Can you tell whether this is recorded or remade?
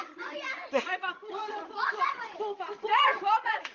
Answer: remade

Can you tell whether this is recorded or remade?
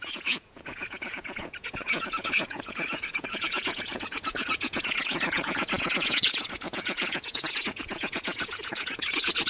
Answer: remade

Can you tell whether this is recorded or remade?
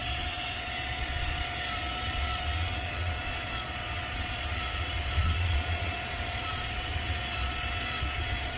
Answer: remade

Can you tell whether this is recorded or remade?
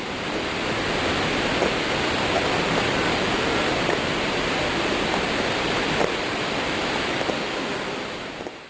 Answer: recorded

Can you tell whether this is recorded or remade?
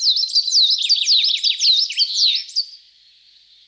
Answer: recorded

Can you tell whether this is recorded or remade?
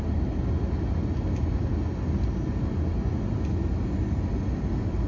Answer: recorded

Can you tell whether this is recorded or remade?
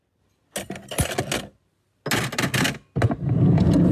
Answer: recorded